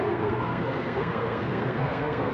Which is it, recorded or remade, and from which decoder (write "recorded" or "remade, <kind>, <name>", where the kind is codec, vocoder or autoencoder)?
remade, codec, SNAC